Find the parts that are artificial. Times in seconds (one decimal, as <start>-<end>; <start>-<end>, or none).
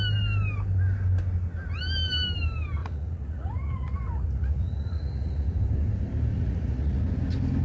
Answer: 2.8-5.6; 6.3-7.0